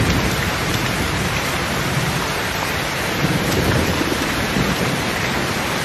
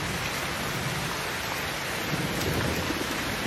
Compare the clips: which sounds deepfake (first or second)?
first